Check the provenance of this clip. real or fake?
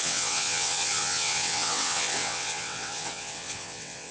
fake